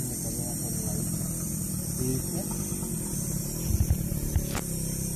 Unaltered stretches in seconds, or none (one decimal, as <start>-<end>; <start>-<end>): 0.0-5.2